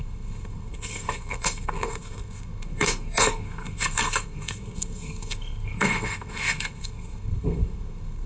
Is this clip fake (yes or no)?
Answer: yes